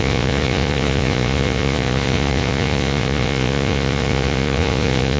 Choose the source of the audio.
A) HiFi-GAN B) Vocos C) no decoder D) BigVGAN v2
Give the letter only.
B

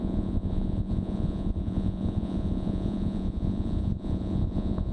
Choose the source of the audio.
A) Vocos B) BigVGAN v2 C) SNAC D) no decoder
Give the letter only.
A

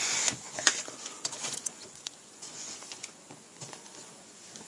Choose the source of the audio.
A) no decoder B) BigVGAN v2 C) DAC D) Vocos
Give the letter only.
D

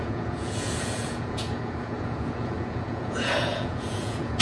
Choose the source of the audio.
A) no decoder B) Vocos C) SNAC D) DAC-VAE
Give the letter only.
B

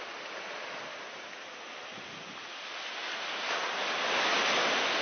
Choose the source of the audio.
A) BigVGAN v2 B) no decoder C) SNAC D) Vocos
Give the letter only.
B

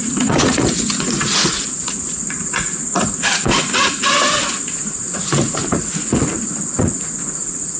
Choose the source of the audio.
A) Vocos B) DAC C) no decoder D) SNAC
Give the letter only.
A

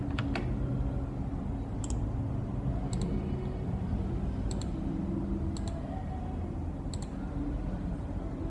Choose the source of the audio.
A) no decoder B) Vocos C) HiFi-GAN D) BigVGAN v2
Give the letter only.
A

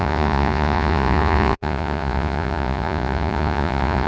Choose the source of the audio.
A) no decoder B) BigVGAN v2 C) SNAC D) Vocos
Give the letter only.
D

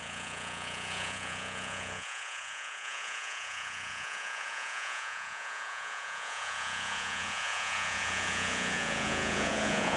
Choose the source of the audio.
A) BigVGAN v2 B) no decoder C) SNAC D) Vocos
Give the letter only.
D